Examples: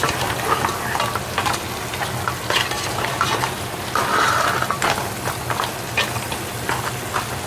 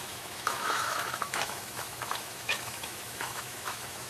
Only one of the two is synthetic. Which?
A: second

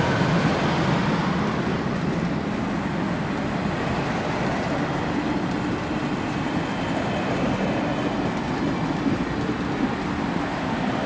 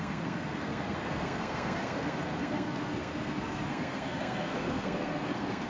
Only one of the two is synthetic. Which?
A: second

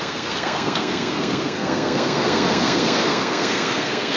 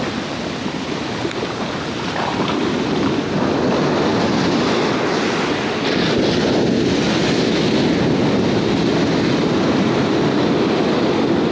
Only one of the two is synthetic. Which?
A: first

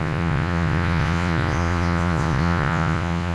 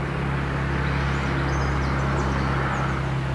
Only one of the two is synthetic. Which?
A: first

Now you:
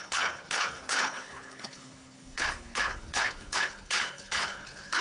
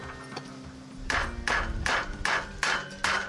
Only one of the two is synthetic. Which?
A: first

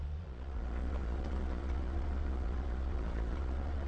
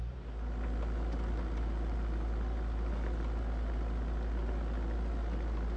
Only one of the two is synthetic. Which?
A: first